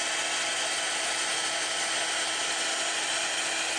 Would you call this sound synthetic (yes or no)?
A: no